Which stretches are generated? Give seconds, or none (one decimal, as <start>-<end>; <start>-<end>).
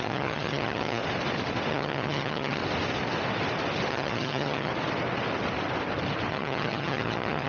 0.0-1.0; 1.7-2.6; 3.9-4.7; 6.3-7.5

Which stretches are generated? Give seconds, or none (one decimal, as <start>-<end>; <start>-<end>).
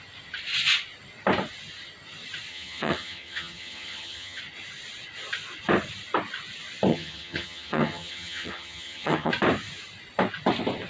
2.5-4.4; 6.9-9.3